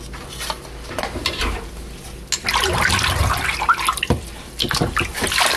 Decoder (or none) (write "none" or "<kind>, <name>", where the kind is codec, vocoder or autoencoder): none